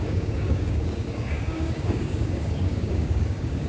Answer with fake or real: fake